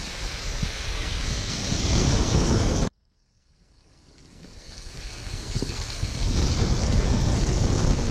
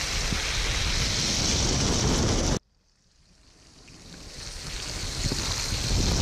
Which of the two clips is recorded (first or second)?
second